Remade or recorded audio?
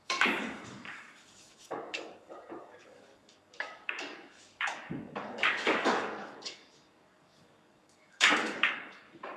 remade